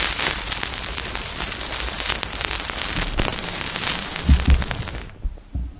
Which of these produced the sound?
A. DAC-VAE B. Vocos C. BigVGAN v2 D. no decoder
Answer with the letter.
D